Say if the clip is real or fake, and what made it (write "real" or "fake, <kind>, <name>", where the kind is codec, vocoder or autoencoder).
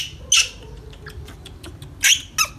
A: real